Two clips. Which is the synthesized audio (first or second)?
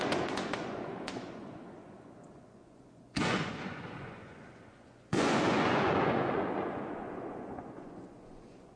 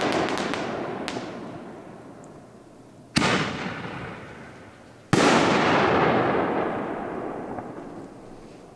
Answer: first